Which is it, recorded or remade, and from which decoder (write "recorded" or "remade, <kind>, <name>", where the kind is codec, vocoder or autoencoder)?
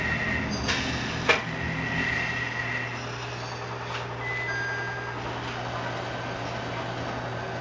recorded